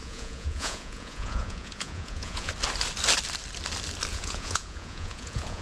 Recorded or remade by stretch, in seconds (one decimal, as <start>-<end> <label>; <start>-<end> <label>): 0.0-2.5 remade; 2.5-4.1 recorded; 4.1-5.6 remade